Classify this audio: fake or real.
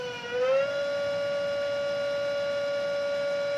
real